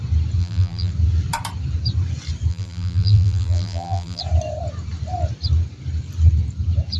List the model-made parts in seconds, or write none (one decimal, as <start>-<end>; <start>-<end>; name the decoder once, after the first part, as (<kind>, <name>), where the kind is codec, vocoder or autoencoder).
0.4-0.9 (vocoder, BigVGAN v2); 2.5-4.2